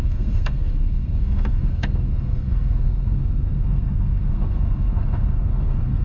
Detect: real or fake fake